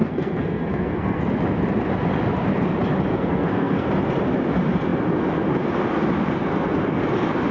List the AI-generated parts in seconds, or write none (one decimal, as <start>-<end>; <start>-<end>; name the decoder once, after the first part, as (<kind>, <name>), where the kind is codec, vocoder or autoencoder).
0.0-1.2 (codec, SNAC); 3.1-3.9